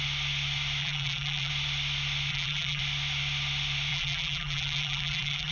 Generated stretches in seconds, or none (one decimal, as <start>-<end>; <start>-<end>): 0.8-1.5; 2.3-2.8; 3.9-5.5